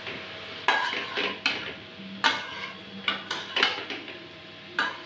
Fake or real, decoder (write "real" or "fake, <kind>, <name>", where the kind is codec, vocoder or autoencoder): real